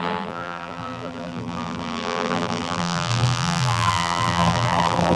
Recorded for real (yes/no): no